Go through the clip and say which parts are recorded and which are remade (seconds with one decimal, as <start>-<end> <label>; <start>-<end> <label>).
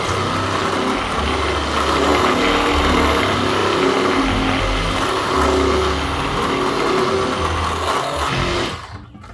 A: 0.0-9.3 recorded